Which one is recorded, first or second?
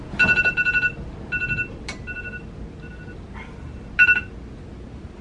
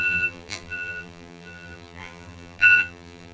first